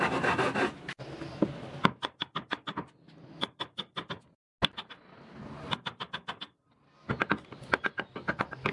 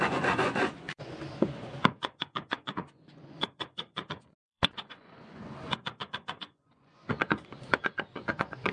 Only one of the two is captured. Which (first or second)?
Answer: first